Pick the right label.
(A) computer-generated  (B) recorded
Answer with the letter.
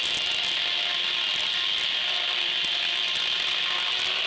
B